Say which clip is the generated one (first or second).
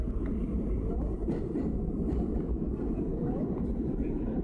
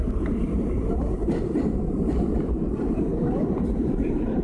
second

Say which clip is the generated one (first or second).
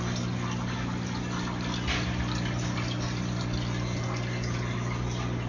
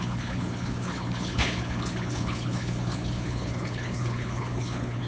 second